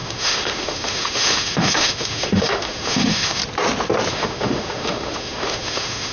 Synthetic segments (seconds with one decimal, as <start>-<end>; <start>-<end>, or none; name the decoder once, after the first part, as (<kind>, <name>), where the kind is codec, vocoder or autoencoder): 0.0-3.4 (autoencoder, DAC-VAE); 4.1-6.1

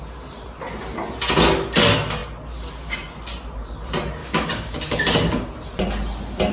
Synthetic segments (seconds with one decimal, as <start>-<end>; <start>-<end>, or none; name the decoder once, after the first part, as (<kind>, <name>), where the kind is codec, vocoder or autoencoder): 4.2-5.5 (codec, DAC)

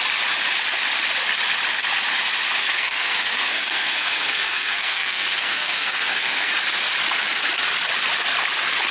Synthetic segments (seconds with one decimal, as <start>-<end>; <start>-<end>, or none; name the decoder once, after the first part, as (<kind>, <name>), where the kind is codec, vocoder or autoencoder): 2.6-6.5 (codec, SNAC)

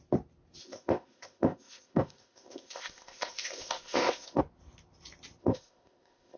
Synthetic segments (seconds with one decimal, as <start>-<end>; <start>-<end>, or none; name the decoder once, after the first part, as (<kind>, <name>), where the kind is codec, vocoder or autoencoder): 0.6-4.4 (codec, ZipCodec); 5.4-6.4

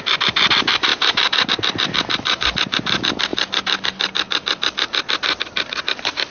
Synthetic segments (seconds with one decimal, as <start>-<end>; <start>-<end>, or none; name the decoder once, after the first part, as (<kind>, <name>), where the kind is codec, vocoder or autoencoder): 0.9-1.5 (vocoder, BigVGAN v2)